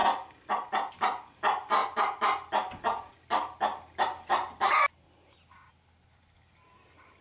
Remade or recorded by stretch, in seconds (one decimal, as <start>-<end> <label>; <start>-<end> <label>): 0.0-7.2 recorded

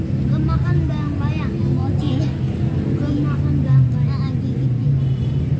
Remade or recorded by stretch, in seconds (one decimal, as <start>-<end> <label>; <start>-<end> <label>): 0.0-5.6 recorded

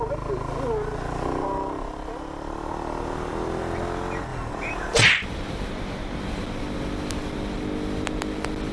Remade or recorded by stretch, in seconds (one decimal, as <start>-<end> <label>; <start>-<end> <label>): 0.0-8.7 recorded

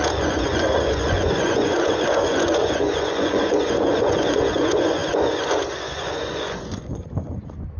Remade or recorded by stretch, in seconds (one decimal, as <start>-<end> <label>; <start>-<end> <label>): 0.0-7.8 remade

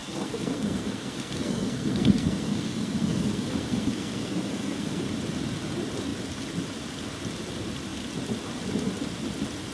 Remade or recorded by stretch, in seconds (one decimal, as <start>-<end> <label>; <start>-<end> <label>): 0.0-5.1 remade; 5.1-9.7 recorded

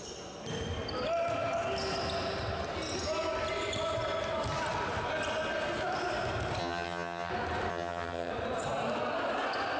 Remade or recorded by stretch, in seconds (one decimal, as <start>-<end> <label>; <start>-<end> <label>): 0.0-6.6 recorded; 6.6-7.3 remade; 7.3-7.7 recorded; 7.7-8.3 remade; 8.3-9.8 recorded

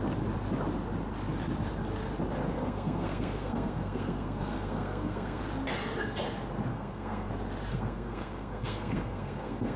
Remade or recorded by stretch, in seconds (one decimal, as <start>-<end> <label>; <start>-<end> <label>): 0.0-2.5 recorded; 2.5-5.4 remade; 5.4-6.7 recorded; 6.7-7.3 remade; 7.3-7.7 recorded; 7.7-9.8 remade

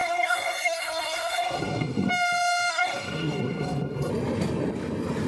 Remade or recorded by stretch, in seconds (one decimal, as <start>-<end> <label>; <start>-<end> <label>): 0.0-2.1 remade; 2.1-2.7 recorded; 2.7-4.1 remade; 4.1-5.3 recorded